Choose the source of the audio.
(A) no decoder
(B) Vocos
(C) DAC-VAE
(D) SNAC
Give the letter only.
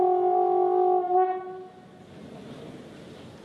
A